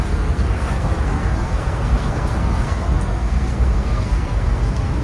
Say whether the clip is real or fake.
fake